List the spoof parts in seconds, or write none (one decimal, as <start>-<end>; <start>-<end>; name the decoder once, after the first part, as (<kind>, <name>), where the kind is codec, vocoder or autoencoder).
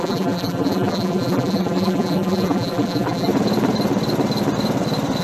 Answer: 0.0-3.3 (vocoder, BigVGAN v2)